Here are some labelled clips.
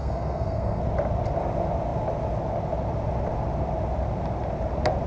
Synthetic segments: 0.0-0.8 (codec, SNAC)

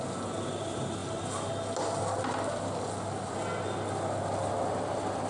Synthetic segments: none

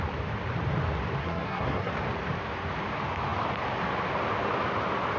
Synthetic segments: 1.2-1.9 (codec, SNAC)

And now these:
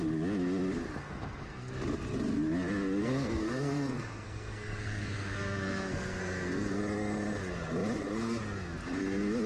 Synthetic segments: 1.0-1.7 (codec, SNAC); 3.0-6.8

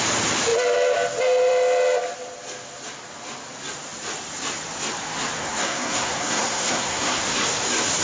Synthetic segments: 5.4-7.2 (codec, SNAC)